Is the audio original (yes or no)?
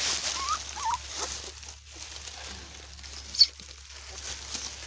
yes